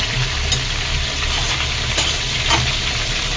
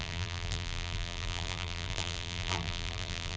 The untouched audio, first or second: first